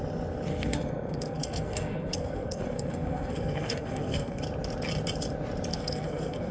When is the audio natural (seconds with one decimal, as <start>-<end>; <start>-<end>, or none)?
0.0-0.5; 4.4-5.7